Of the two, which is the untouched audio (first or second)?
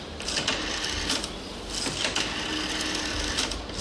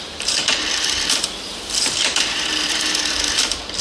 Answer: first